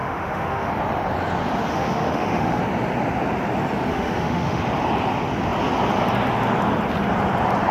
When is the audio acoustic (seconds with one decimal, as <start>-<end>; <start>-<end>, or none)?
0.7-1.7; 2.6-3.9; 4.6-7.7